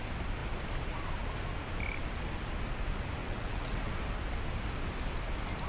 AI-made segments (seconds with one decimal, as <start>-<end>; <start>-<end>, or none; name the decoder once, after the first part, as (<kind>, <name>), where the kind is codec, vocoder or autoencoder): 3.2-3.9 (vocoder, WaveNeXt)